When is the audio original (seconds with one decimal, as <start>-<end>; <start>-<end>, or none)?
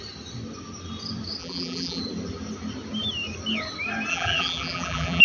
0.0-1.4; 2.0-4.1